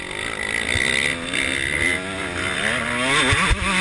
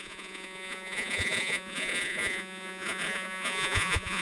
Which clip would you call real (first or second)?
first